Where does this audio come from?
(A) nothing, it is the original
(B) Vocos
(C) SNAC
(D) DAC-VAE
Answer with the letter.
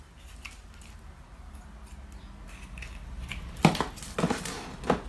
A